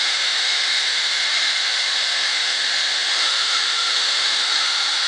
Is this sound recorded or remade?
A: remade